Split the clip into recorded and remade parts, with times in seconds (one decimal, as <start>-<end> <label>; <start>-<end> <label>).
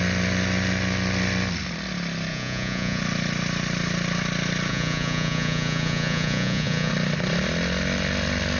0.0-2.3 recorded; 2.3-3.0 remade; 3.0-4.7 recorded; 4.7-6.9 remade; 6.9-8.6 recorded